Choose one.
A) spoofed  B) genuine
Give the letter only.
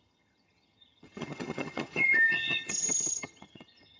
A